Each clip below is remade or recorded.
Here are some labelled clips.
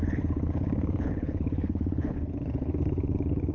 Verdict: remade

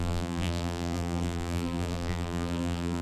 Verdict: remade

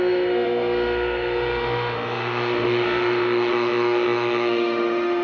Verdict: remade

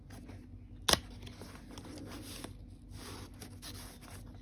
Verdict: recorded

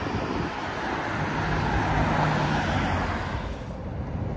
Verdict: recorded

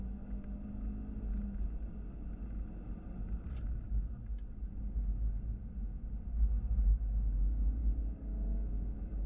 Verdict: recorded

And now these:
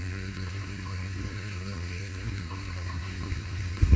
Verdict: remade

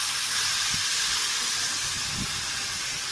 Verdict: recorded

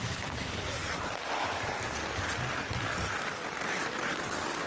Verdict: recorded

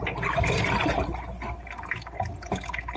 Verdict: recorded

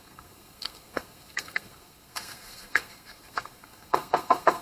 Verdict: remade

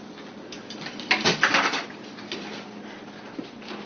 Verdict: remade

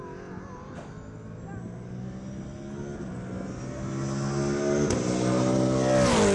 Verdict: recorded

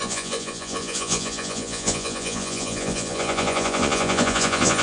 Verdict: remade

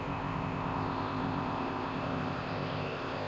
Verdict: remade